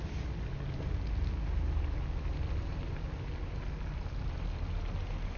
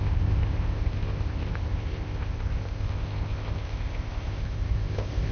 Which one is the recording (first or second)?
first